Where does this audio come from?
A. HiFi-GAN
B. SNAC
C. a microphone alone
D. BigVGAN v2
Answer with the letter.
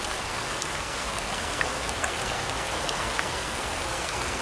B